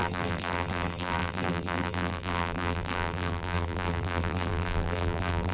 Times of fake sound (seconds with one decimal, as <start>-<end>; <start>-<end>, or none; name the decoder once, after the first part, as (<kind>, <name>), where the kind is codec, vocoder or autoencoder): 0.0-5.5 (vocoder, BigVGAN v2)